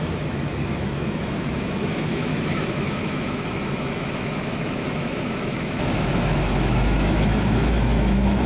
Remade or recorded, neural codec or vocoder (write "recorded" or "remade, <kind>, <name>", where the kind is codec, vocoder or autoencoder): remade, autoencoder, DAC-VAE